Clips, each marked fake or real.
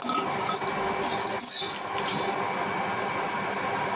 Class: real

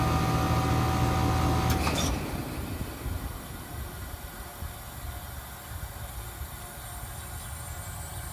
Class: real